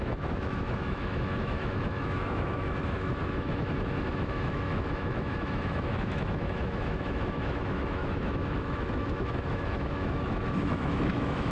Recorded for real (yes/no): no